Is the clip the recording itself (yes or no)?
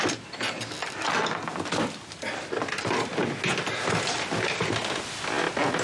yes